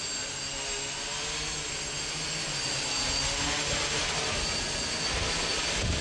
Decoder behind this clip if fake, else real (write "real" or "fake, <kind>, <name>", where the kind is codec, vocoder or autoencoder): real